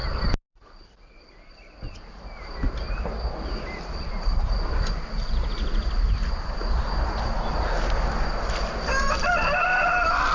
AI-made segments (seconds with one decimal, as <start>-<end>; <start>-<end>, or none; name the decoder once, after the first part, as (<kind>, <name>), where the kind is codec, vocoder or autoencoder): none